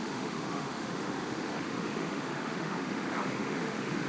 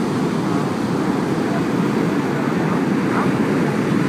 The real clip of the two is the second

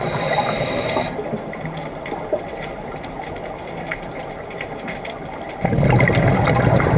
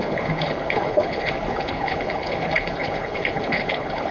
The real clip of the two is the first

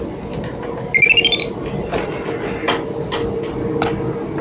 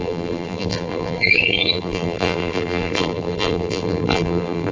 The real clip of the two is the first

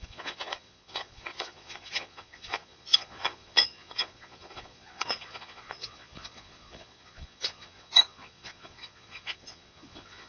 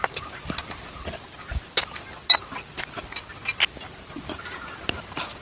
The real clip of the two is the second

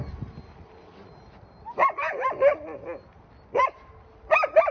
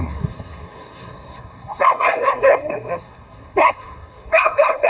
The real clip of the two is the first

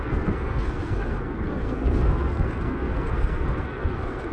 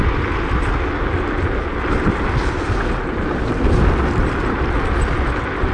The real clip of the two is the second